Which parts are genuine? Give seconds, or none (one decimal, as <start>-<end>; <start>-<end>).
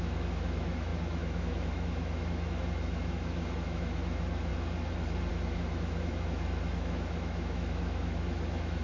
4.5-5.3